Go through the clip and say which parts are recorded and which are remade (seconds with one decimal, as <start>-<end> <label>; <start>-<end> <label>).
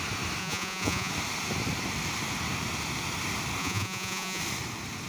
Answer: 0.0-0.4 recorded; 0.4-1.1 remade; 1.1-3.6 recorded; 3.6-4.4 remade; 4.4-5.1 recorded